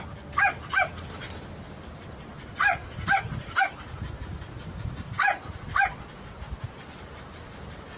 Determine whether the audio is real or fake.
real